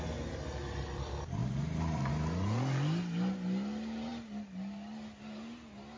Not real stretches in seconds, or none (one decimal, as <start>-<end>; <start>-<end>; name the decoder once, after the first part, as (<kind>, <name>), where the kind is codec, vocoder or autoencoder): 1.4-2.1 (vocoder, BigVGAN v2)